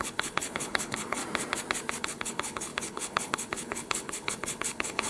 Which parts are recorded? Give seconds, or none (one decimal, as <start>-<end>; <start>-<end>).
1.2-2.0